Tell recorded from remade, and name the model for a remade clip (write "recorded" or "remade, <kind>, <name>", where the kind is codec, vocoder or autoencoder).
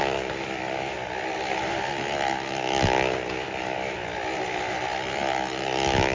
recorded